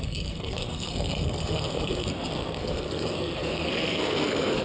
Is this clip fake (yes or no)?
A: yes